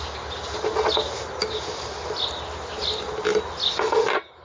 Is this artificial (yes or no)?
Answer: no